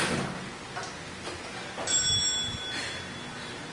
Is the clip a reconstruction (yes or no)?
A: no